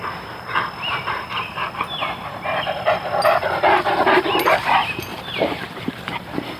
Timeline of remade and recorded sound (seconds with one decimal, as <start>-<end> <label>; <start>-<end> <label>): 0.0-5.1 recorded; 5.1-6.6 remade